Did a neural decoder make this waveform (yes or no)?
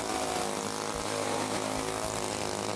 no